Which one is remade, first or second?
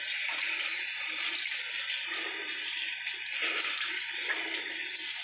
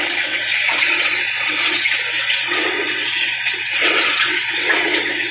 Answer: second